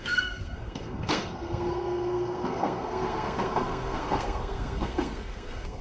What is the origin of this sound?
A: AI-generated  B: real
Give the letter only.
A